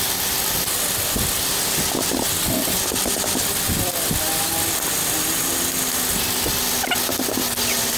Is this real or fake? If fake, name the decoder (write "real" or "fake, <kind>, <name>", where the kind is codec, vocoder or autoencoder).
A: real